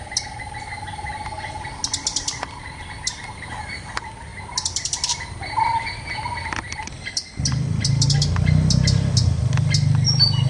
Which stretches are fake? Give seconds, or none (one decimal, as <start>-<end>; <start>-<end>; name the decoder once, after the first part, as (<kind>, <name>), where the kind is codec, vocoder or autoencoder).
none

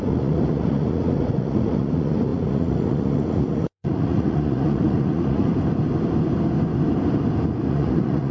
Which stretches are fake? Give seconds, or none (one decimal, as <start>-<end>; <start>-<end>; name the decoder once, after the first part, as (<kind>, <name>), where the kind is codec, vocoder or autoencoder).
0.0-5.5 (vocoder, Vocos); 7.7-8.3